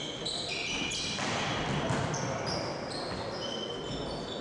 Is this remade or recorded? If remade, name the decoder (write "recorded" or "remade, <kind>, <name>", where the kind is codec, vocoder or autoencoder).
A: recorded